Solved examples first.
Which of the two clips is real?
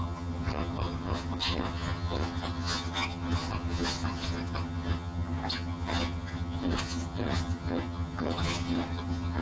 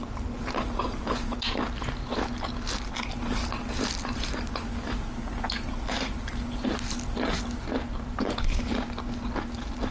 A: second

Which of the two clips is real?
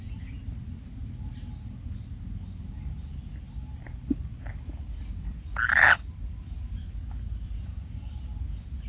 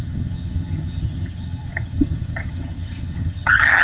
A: first